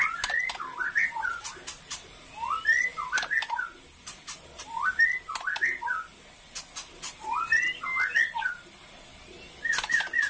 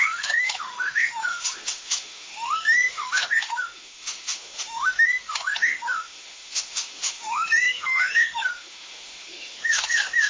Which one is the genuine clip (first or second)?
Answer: first